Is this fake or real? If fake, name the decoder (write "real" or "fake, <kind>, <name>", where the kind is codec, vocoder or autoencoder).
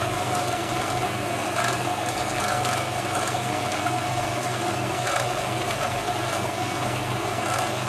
fake, codec, SNAC